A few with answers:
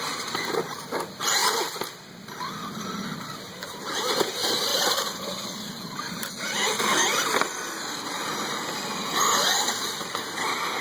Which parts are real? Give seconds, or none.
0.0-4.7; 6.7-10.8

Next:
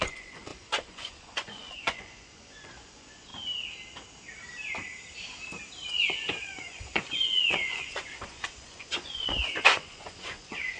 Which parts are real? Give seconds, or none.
3.3-6.4